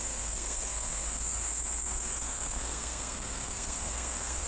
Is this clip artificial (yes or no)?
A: yes